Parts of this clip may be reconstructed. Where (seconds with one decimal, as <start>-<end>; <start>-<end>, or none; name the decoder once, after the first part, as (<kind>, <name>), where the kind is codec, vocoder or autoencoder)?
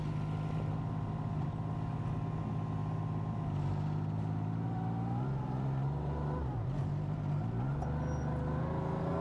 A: none